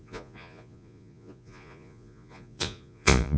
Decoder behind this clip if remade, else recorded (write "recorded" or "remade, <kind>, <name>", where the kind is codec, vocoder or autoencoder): remade, vocoder, Vocos